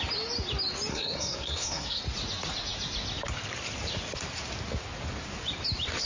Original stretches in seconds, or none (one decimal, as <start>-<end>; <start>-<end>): 0.0-0.9; 2.0-6.1